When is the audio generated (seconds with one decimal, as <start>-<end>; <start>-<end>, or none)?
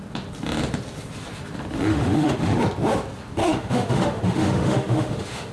1.9-2.6; 3.4-5.5